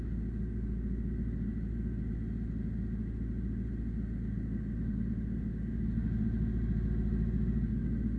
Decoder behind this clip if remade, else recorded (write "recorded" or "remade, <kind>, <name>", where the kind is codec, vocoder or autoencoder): recorded